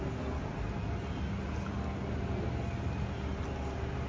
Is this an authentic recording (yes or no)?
yes